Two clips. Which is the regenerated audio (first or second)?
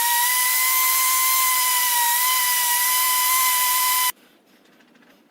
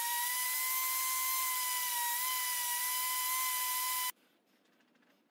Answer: first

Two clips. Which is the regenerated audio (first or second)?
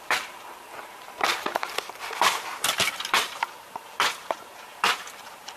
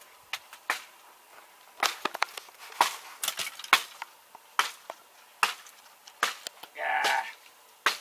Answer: first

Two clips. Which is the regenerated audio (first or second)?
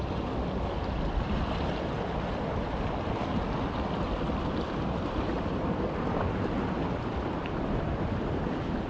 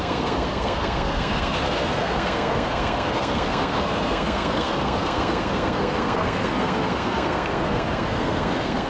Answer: second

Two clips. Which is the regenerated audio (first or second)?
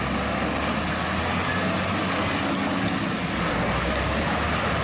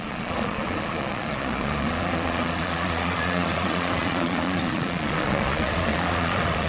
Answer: second